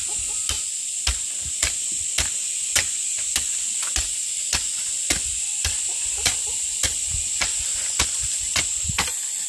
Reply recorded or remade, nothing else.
recorded